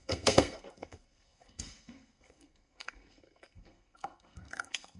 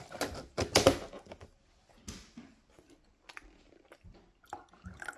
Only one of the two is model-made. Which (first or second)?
first